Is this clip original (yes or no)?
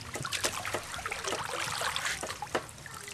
yes